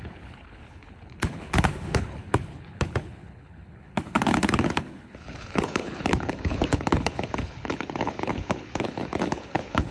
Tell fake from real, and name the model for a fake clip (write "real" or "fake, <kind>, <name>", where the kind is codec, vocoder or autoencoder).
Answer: fake, codec, HILCodec